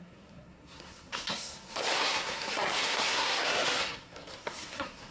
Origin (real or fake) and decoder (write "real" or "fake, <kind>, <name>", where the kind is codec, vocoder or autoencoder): fake, codec, SNAC